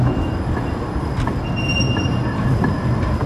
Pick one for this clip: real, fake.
real